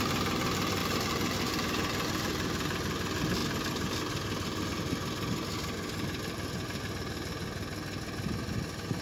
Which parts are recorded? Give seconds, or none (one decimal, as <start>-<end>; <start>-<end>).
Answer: 0.0-9.0